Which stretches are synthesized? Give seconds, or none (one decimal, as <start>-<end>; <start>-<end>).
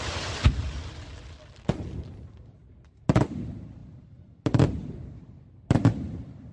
none